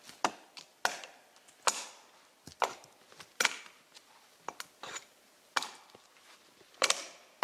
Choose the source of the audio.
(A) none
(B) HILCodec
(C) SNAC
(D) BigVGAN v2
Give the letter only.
A